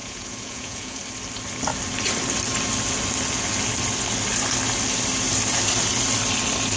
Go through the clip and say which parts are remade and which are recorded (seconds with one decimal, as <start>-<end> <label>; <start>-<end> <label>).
0.0-1.0 remade; 1.0-6.8 recorded